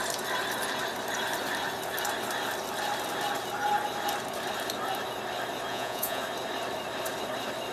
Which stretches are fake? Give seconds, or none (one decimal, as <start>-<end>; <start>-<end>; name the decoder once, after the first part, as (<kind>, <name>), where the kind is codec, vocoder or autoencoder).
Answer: 5.7-6.2 (vocoder, Vocos)

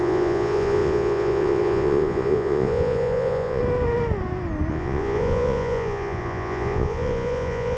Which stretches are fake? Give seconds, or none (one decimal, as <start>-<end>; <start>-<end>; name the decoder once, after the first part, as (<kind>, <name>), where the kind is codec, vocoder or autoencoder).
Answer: 0.0-3.6 (vocoder, Vocos); 4.7-7.8

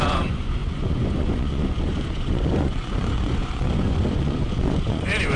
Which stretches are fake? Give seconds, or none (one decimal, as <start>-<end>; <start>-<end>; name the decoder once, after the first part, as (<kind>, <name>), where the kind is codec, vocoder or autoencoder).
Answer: 0.0-5.4 (vocoder, Vocos)

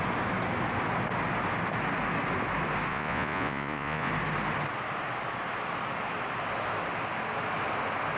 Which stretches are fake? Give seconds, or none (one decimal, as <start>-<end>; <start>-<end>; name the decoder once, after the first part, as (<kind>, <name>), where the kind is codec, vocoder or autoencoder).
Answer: 2.9-4.1 (vocoder, Vocos)

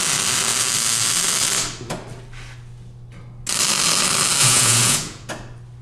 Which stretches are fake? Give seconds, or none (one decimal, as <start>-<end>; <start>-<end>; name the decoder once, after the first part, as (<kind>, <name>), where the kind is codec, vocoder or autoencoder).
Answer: 4.4-5.3 (vocoder, Vocos)

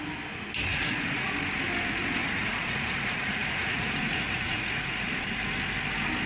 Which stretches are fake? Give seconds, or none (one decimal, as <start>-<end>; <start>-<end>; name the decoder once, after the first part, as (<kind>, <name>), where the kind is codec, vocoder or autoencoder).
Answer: 0.7-1.3 (vocoder, Vocos); 2.2-5.5